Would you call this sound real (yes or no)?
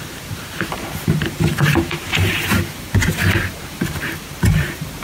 no